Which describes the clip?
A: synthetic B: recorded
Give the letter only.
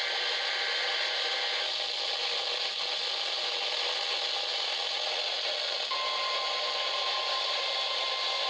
B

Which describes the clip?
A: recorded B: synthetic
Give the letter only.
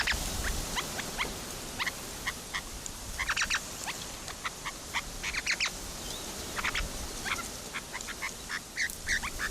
A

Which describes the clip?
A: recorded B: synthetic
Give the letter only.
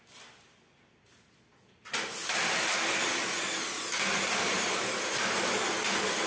A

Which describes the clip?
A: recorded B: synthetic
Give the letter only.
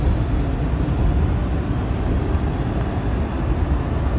A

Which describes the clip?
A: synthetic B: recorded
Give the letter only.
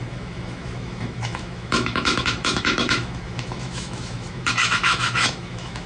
A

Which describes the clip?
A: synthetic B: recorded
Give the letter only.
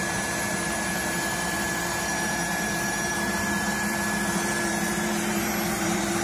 A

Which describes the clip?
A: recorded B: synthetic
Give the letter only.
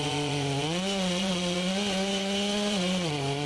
B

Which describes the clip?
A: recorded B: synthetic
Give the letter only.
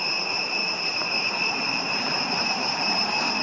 B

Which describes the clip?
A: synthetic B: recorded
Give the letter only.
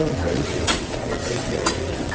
A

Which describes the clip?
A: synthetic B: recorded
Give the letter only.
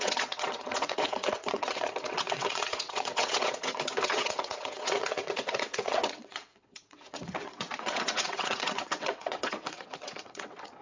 A